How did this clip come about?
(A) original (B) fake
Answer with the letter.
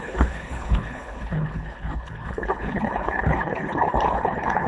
B